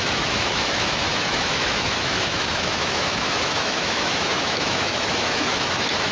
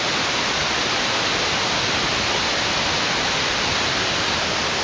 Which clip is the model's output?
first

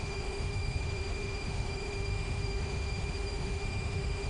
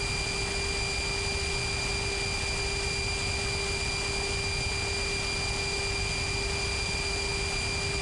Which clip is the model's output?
first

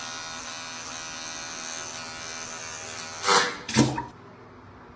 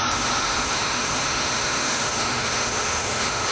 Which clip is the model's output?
second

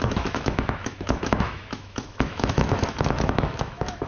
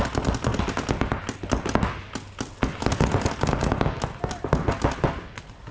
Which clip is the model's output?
first